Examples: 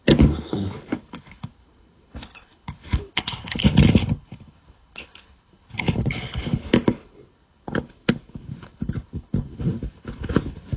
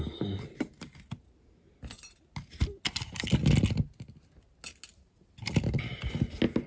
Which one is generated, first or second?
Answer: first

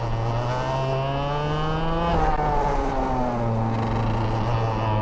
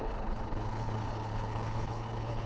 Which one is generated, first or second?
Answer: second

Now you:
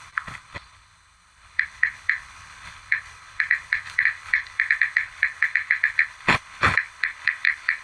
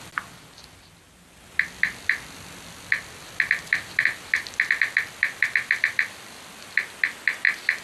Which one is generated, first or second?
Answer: first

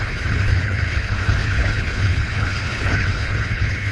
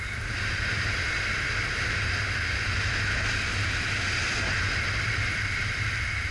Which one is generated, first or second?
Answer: first